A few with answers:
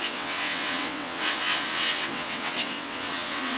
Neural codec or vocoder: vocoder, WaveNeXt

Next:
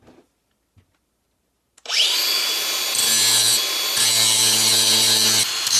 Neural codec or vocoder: none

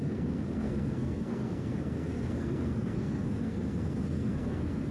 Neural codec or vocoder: codec, SNAC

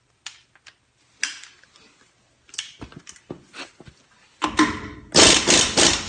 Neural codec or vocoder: none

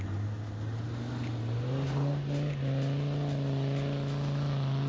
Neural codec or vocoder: none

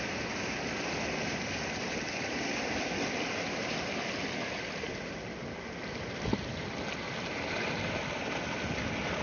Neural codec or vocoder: none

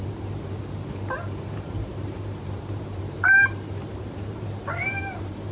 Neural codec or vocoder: vocoder, BigVGAN v2